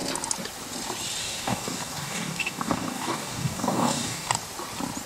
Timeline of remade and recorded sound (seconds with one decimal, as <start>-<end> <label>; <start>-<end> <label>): 0.0-1.2 recorded; 1.2-4.3 remade; 4.3-5.1 recorded